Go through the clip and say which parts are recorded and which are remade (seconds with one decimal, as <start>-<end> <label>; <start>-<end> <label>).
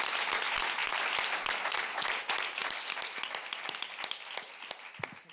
0.0-5.3 recorded